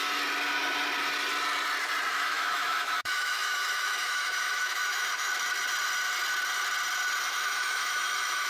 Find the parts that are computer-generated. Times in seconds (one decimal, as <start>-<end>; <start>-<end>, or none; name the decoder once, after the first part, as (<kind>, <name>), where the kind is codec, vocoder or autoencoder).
2.1-5.3 (autoencoder, DAC-VAE); 7.3-8.5